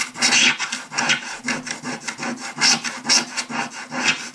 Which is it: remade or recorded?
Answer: recorded